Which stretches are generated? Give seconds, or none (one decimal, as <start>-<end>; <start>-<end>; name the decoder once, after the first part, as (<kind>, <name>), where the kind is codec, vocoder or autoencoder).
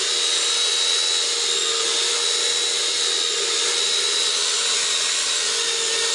none